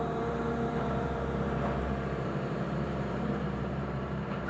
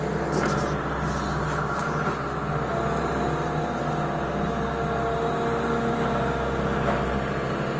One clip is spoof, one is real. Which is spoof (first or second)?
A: first